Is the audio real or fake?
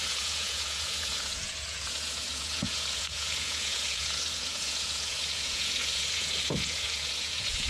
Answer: fake